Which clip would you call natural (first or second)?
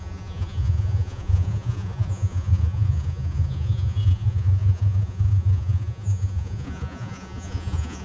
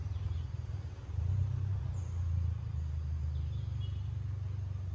second